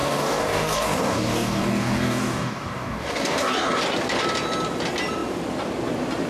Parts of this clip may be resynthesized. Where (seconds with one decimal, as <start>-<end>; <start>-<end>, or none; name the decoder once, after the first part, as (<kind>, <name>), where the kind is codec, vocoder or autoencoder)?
0.0-3.8 (codec, DAC)